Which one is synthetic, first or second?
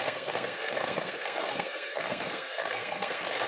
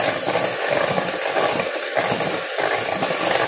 first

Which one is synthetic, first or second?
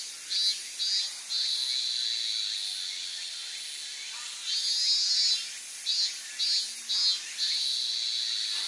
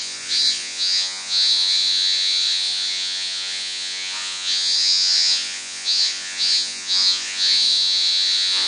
second